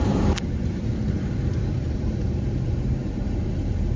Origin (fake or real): fake